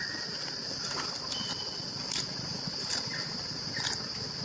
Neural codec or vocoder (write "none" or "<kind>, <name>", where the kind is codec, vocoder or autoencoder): none